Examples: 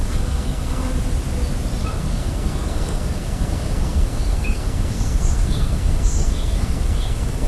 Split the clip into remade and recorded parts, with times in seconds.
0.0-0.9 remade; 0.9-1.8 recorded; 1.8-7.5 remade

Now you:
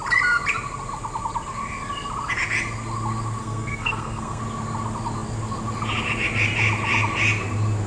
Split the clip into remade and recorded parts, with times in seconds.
0.0-3.4 recorded; 3.4-4.4 remade; 4.4-7.9 recorded

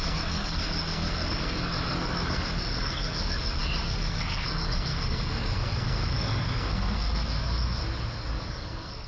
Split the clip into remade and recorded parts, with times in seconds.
0.0-7.8 remade; 7.8-8.5 recorded; 8.5-9.1 remade

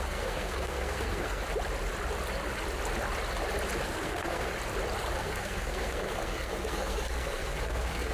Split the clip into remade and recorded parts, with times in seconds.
0.0-1.4 remade; 1.4-3.8 recorded; 3.8-4.5 remade; 4.5-5.2 recorded; 5.2-8.1 remade

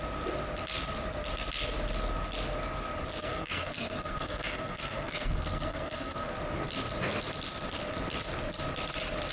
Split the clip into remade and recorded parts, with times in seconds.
0.0-3.2 recorded; 3.2-6.3 remade; 6.3-9.3 recorded

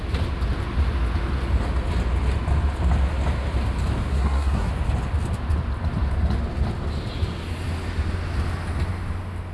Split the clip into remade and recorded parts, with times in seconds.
0.0-4.1 recorded; 4.1-4.7 remade; 4.7-9.5 recorded